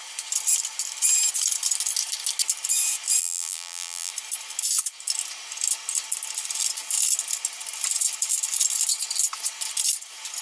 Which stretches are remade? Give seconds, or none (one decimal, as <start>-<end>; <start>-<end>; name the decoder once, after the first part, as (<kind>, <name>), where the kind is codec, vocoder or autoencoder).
3.2-4.1 (vocoder, BigVGAN v2)

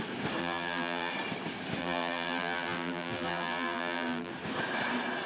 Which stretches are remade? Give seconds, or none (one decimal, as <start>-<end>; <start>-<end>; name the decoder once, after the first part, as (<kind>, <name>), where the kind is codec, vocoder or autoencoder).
0.4-1.1 (vocoder, BigVGAN v2); 1.8-4.3

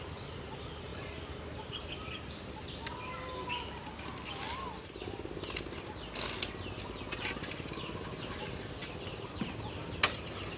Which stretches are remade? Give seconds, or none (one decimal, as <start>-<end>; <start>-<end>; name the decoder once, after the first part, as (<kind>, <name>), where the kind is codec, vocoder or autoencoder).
0.9-2.5 (vocoder, BigVGAN v2)